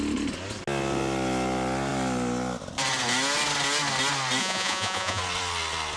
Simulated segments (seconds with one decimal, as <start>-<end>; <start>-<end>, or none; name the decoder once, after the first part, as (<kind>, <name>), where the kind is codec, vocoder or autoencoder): 4.4-5.2 (vocoder, Vocos)